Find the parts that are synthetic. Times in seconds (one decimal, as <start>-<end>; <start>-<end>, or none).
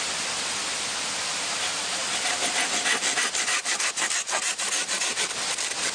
none